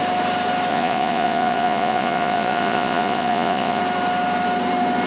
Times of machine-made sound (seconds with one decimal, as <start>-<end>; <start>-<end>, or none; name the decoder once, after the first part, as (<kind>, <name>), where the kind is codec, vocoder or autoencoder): 0.7-3.8 (vocoder, Vocos)